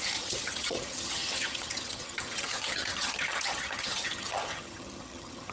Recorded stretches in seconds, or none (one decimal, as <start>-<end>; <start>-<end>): none